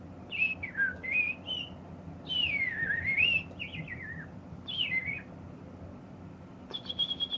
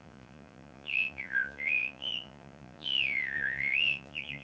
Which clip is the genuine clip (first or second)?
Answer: first